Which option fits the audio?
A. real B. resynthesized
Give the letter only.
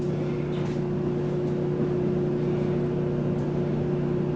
A